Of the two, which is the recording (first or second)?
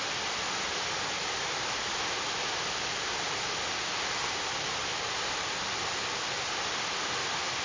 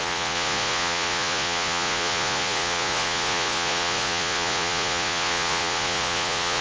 first